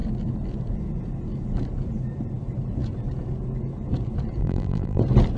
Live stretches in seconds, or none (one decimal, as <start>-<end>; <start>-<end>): 0.0-4.4; 5.0-5.4